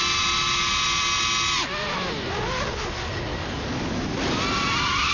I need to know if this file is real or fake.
real